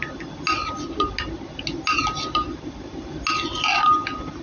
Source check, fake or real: real